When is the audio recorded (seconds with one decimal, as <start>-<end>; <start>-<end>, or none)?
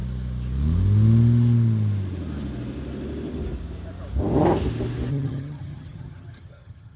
0.0-5.1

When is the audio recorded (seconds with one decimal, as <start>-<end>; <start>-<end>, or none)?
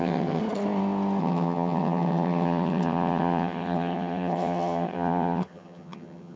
0.4-1.2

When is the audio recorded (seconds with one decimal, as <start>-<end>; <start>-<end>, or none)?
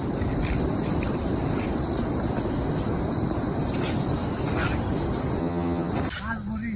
0.0-5.4; 5.9-6.8